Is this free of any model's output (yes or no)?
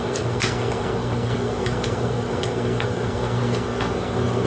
no